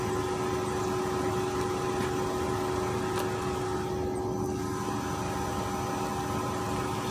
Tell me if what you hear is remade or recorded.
recorded